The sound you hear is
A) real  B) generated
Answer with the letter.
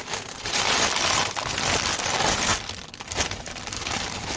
B